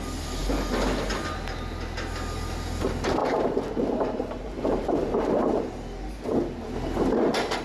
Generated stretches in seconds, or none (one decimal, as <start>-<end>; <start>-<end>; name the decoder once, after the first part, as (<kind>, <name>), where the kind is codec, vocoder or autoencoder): 3.2-5.7 (vocoder, BigVGAN v2)